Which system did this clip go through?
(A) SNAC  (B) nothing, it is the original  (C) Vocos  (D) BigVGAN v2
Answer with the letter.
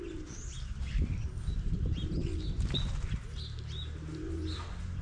B